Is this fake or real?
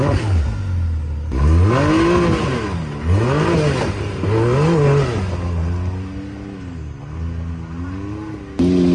real